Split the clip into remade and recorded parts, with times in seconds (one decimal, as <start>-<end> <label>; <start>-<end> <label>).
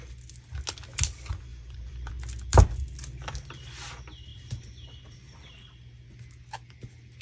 0.0-1.5 recorded; 1.5-2.1 remade; 2.1-7.2 recorded